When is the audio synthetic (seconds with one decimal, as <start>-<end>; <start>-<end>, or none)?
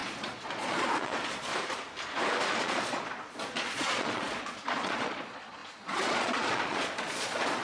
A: 0.0-1.5; 2.5-7.6